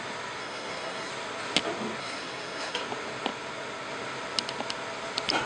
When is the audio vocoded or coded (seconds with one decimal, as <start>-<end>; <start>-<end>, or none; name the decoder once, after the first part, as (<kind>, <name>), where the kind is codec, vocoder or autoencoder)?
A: 0.4-1.1 (codec, SNAC); 2.0-2.8